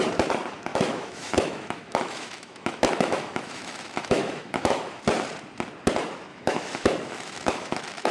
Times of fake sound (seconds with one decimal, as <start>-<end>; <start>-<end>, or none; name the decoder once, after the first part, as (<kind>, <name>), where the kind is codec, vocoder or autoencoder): 0.7-5.0 (autoencoder, DAC-VAE); 6.3-8.1